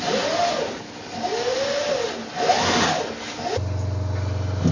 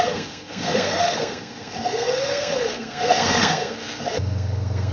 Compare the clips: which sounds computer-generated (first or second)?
second